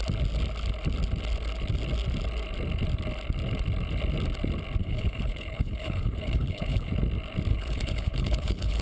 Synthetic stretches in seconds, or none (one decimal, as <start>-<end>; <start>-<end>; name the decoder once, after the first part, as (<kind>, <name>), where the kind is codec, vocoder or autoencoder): 4.8-6.9 (codec, HILCodec); 7.5-8.8